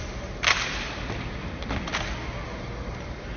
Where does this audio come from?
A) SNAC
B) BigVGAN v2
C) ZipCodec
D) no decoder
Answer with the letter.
D